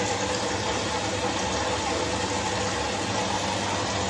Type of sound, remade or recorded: recorded